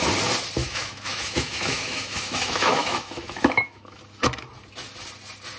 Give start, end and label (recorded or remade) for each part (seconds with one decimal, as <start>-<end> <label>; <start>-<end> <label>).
0.0-0.6 recorded; 0.6-4.0 remade; 4.0-5.6 recorded